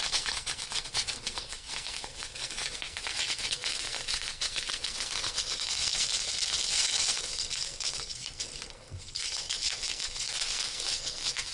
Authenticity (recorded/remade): remade